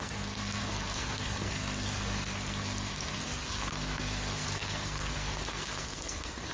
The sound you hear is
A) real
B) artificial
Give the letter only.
B